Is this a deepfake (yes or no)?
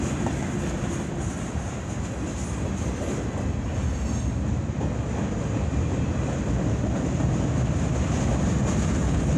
no